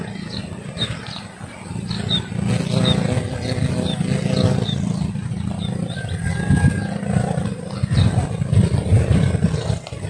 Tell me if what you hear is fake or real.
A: real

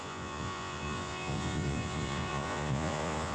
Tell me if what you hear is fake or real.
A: fake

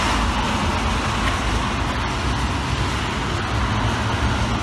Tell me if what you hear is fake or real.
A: real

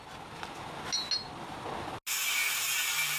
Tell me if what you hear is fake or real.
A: real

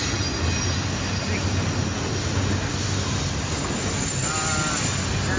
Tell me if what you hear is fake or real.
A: real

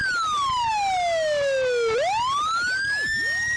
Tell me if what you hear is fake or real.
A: real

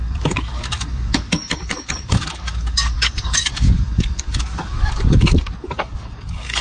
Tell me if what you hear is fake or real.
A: fake